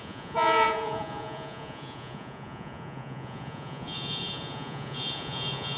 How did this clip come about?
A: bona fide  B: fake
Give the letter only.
B